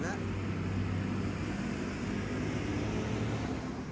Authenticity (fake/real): real